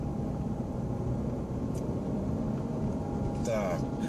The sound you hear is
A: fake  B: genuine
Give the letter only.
B